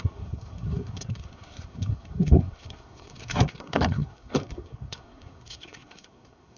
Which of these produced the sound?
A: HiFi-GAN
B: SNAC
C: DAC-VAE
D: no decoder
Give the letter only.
B